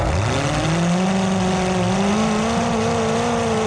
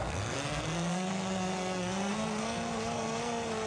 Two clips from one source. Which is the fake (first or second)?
second